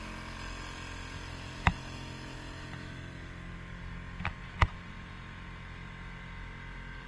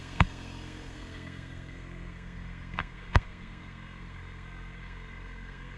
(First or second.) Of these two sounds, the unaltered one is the first